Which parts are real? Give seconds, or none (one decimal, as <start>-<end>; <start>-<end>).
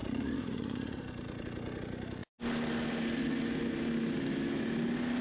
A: 1.0-5.2